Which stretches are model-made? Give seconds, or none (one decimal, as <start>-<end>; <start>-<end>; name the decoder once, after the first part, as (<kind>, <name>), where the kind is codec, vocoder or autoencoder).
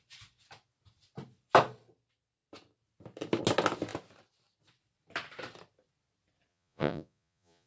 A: 6.5-7.7 (vocoder, Vocos)